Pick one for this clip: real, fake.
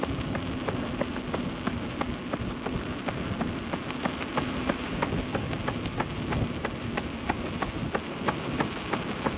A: real